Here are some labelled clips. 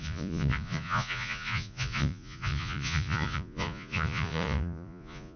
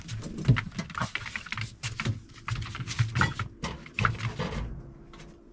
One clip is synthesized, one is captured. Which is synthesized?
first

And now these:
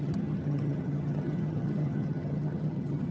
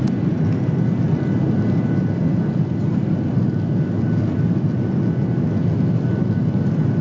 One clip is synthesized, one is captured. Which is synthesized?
first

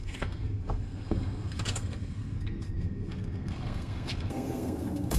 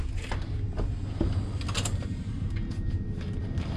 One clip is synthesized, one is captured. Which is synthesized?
first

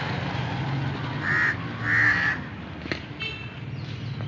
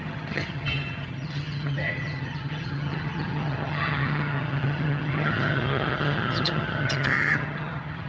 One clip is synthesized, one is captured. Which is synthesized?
second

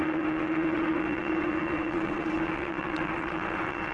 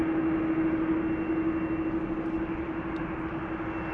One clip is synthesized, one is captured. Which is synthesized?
first